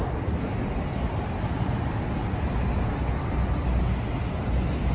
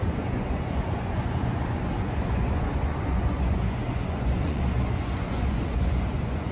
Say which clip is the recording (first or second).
first